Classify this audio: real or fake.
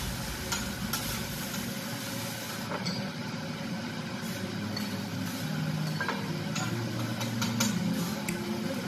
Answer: real